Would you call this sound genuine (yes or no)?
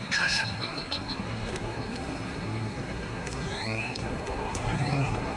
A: no